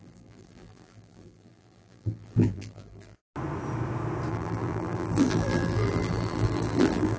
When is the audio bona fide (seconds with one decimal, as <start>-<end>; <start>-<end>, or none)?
3.2-4.3